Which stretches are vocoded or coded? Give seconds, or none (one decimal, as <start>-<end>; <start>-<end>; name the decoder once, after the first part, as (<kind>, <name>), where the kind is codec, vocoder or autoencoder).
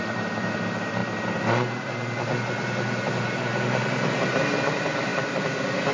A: none